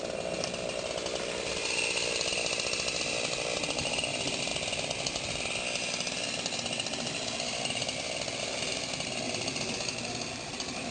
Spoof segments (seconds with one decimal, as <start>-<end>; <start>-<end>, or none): none